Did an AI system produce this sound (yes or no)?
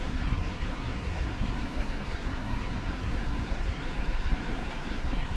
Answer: yes